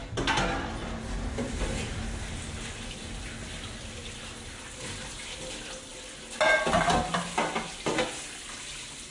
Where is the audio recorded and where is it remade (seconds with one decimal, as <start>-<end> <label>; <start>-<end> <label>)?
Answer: 0.0-9.1 recorded